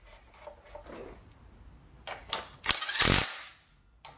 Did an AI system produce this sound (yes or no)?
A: no